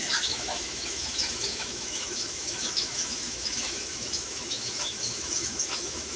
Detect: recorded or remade remade